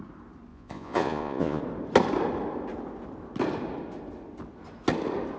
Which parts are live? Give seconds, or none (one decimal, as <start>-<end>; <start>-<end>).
0.0-0.5; 1.6-5.4